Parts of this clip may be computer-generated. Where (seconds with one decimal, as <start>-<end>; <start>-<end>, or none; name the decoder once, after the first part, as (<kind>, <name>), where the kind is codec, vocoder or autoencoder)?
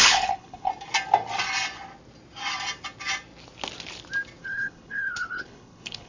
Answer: 0.0-0.7 (codec, HILCodec); 4.4-6.1